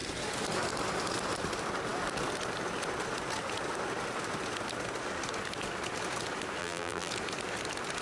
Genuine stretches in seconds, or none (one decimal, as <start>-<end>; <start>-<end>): 0.0-6.6; 7.1-8.0